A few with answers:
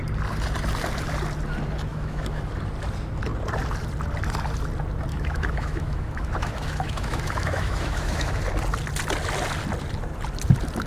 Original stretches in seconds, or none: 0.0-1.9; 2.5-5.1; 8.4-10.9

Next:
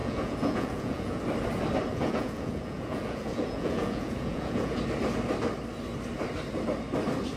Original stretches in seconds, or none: 1.2-1.9; 4.8-7.4

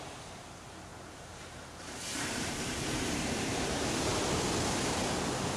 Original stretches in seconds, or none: 4.1-5.6